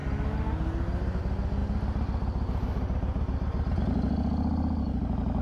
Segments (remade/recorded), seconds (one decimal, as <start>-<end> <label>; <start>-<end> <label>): 0.0-5.4 recorded